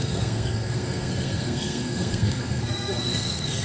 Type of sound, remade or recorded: remade